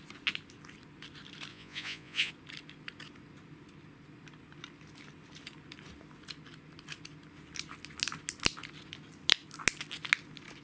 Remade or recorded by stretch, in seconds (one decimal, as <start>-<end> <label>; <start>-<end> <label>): 0.0-1.5 recorded; 1.5-2.3 remade; 2.3-10.6 recorded

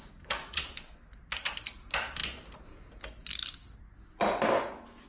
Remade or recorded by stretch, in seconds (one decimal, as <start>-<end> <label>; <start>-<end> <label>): 0.0-0.6 remade; 0.6-5.1 recorded

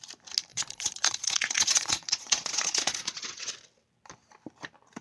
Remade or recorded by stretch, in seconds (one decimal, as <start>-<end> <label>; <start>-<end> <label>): 0.0-0.5 recorded; 0.5-3.5 remade; 3.5-5.0 recorded

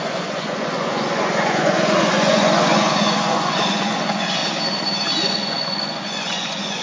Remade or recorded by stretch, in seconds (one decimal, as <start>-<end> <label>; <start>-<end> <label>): 0.0-4.4 remade; 4.4-5.2 recorded; 5.2-6.8 remade

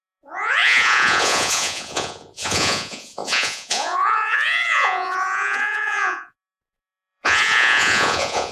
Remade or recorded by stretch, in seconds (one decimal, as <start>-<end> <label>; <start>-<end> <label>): 0.0-8.5 remade